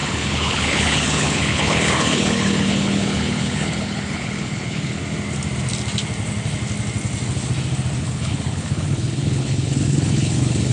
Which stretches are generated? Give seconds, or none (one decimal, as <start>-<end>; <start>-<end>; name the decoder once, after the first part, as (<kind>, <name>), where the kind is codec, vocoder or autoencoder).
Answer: 0.0-5.0 (codec, HILCodec); 8.0-10.7